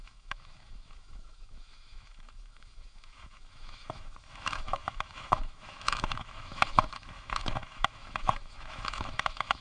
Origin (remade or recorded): remade